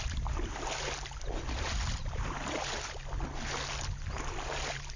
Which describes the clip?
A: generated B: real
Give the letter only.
B